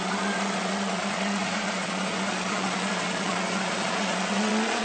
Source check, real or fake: fake